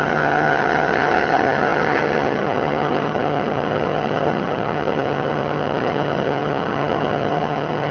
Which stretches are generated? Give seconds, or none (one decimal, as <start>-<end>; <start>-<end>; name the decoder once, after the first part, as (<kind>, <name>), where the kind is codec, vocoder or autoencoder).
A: 0.0-7.9 (vocoder, HiFi-GAN)